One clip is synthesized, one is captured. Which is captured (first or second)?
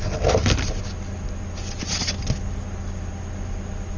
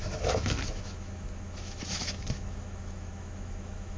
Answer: first